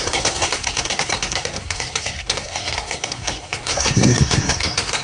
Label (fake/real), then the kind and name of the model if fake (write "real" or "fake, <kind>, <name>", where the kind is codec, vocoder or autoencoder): fake, codec, SNAC